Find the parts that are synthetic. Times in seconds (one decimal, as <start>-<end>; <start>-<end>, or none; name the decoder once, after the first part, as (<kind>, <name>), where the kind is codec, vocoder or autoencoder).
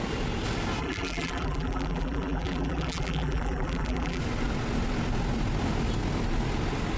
0.8-4.2 (vocoder, BigVGAN v2)